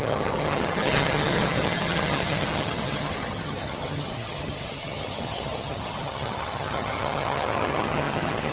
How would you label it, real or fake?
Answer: fake